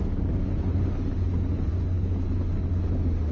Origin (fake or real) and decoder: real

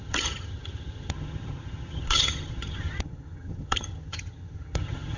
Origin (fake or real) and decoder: fake, vocoder, HiFi-GAN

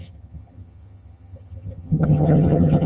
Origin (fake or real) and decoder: fake, vocoder, HiFi-GAN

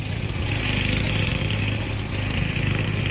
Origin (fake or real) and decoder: real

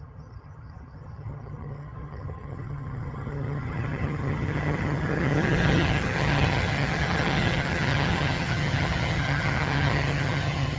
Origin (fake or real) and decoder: fake, vocoder, HiFi-GAN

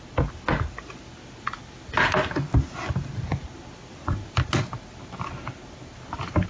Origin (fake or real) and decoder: real